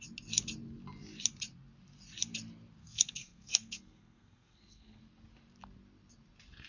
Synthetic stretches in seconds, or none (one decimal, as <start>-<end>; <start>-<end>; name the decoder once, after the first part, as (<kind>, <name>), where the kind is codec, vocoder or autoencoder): 2.8-5.0 (codec, SNAC)